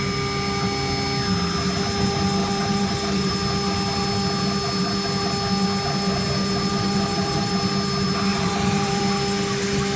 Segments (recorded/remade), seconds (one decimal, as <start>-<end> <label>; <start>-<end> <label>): 0.0-2.4 recorded; 2.4-3.3 remade; 3.3-6.7 recorded; 6.7-7.5 remade; 7.5-8.3 recorded; 8.3-9.0 remade; 9.0-10.0 recorded